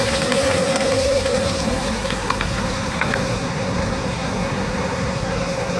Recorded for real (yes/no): no